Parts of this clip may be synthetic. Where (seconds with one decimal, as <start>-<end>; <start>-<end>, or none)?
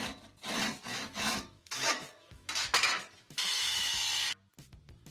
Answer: 0.9-4.0